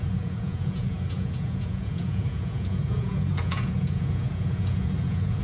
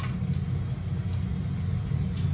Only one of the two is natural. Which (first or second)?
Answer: second